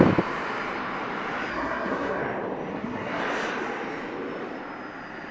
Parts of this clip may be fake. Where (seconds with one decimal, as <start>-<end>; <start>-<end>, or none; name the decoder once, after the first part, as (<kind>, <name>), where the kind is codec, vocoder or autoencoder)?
1.5-2.2 (codec, SNAC); 2.7-3.2